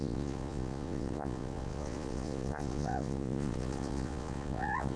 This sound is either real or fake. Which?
fake